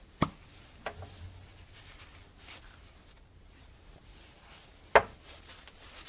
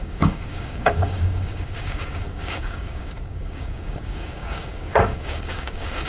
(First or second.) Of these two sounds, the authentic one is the first